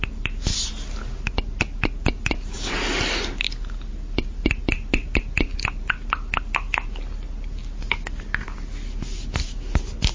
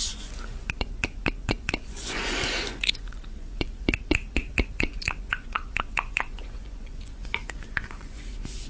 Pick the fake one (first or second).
second